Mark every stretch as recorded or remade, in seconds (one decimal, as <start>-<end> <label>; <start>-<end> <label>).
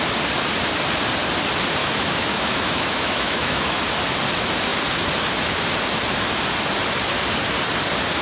0.0-1.8 recorded; 1.8-3.8 remade; 3.8-8.2 recorded